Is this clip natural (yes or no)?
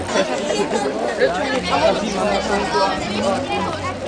yes